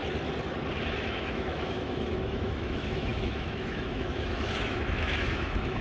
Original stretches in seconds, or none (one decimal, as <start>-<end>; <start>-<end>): 0.0-0.7